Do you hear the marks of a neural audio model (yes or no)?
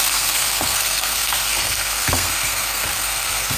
yes